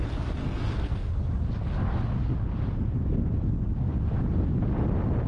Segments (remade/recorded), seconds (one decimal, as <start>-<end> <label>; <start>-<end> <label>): 0.0-0.4 recorded; 0.4-1.2 remade; 1.2-5.3 recorded